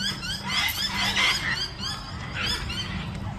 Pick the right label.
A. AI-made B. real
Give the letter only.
B